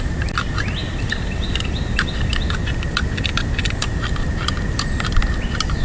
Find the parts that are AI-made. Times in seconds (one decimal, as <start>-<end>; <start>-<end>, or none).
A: none